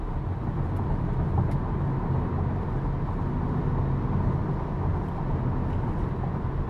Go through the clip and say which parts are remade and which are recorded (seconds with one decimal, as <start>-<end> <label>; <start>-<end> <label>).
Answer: 0.0-6.7 recorded